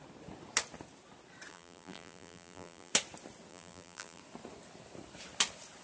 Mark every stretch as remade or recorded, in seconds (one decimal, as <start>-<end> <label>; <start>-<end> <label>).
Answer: 0.0-1.5 recorded; 1.5-2.9 remade; 2.9-3.5 recorded; 3.5-4.2 remade; 4.2-5.8 recorded

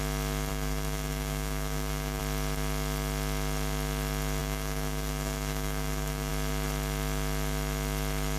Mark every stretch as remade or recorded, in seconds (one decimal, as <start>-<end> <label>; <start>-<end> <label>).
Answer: 0.0-0.5 recorded; 0.5-2.2 remade; 2.2-4.4 recorded; 4.4-6.3 remade; 6.3-8.4 recorded

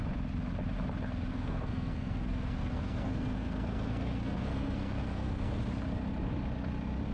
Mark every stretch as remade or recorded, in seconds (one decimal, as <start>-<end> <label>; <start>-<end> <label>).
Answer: 0.0-1.3 recorded; 1.3-5.6 remade; 5.6-7.1 recorded

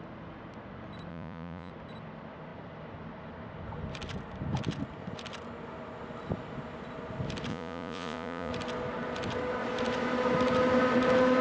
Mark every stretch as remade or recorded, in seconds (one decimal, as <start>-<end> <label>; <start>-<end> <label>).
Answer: 0.0-1.1 recorded; 1.1-1.7 remade; 1.7-7.5 recorded; 7.5-8.5 remade; 8.5-11.4 recorded

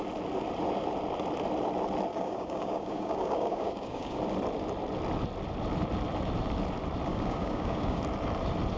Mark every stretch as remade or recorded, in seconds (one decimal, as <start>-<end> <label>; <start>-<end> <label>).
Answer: 0.0-2.1 recorded; 2.1-4.2 remade; 4.2-7.1 recorded; 7.1-8.0 remade; 8.0-8.8 recorded

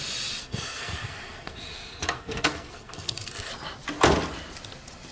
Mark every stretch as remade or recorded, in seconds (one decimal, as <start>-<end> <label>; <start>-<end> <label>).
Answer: 0.0-0.4 recorded; 0.4-3.5 remade; 3.5-5.1 recorded